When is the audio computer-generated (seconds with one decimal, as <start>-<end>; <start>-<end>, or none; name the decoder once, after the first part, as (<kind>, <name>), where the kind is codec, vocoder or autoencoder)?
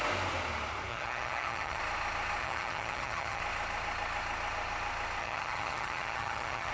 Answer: 0.9-1.8 (vocoder, HiFi-GAN); 2.4-3.4; 5.2-6.7